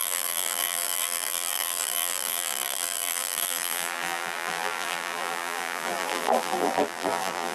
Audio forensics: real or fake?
fake